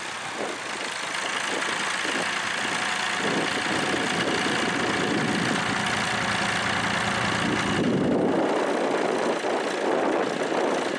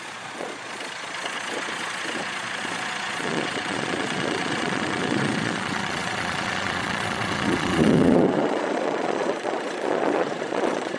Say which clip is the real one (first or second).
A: first